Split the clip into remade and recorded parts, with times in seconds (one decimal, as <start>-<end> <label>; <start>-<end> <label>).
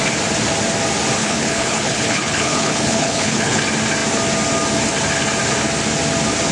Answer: 0.0-1.2 recorded; 1.2-3.6 remade; 3.6-6.5 recorded